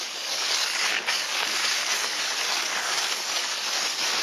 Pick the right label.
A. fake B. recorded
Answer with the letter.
A